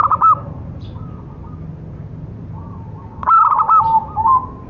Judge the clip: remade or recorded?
recorded